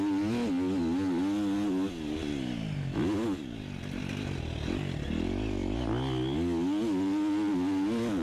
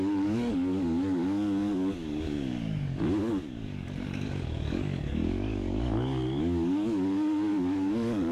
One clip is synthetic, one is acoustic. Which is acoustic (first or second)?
first